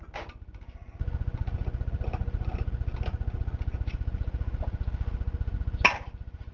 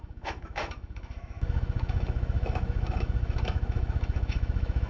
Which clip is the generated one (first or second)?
second